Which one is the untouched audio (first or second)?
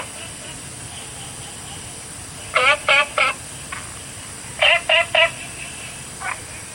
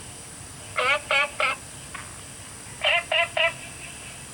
second